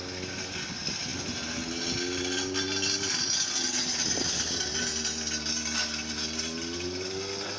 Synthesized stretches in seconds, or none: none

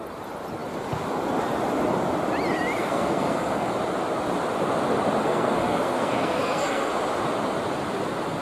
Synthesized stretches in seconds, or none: 2.8-3.7 (codec, SNAC); 5.2-6.9

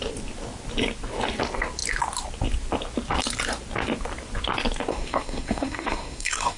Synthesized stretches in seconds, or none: 4.9-6.6 (codec, SNAC)

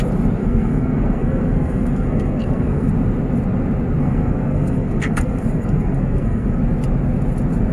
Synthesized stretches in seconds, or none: 0.4-2.9 (codec, SNAC); 4.0-6.6

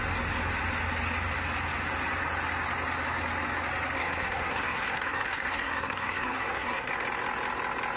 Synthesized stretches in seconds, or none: 4.0-6.9 (codec, SNAC)

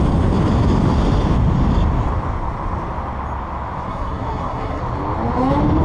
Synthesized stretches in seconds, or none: 3.9-4.8 (codec, SNAC)